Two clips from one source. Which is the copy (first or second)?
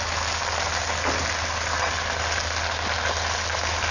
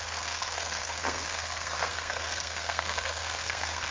second